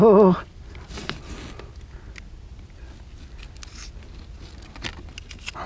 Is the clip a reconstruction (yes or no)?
no